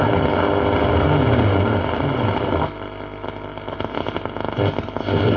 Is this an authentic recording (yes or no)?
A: yes